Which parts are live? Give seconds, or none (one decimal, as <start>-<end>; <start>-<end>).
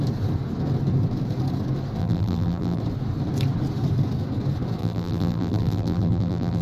0.0-2.0; 2.8-4.8